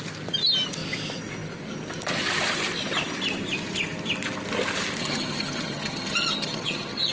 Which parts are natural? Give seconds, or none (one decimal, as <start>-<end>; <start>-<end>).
0.0-5.0